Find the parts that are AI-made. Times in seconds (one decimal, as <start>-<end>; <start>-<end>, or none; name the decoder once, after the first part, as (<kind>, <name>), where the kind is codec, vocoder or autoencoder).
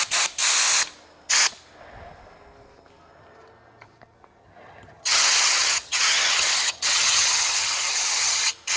4.4-8.4 (vocoder, HiFi-GAN)